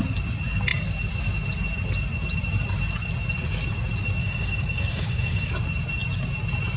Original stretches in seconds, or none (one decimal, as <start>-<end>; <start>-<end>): 0.0-4.2; 5.5-6.8

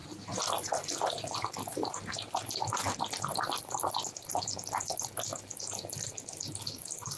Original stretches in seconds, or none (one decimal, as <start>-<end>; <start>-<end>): 5.3-6.3

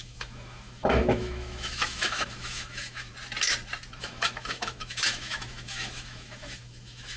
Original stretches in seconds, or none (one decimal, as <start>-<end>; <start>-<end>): 3.1-4.0